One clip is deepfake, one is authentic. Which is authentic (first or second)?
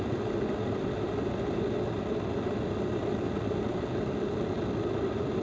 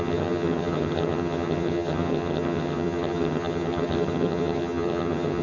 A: first